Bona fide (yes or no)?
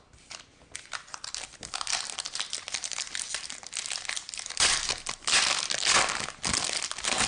yes